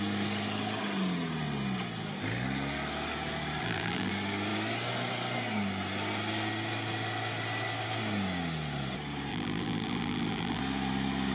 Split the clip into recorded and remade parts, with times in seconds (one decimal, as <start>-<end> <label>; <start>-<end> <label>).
0.0-3.6 recorded; 3.6-4.1 remade; 4.1-9.3 recorded; 9.3-10.6 remade; 10.6-11.3 recorded